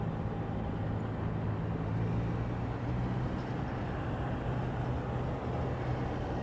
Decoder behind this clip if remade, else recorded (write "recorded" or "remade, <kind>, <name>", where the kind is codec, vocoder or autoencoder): recorded